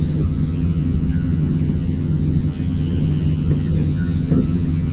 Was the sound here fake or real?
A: fake